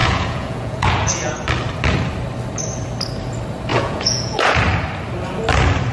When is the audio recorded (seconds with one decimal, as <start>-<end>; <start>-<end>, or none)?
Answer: 1.3-3.7; 4.6-5.9